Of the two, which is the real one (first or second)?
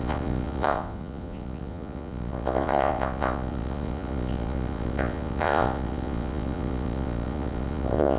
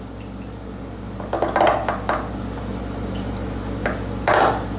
second